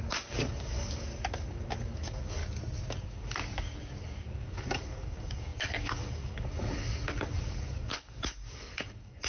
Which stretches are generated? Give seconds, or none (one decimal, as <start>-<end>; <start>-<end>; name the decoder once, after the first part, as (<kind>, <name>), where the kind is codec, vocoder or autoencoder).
0.0-2.4 (codec, DAC); 3.0-9.3